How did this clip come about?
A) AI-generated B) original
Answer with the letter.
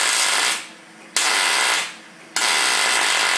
B